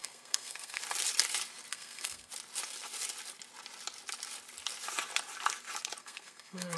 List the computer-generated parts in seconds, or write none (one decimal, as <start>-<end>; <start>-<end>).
0.0-0.8; 1.7-2.3; 6.0-6.8